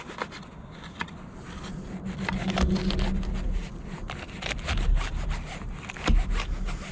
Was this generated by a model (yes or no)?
no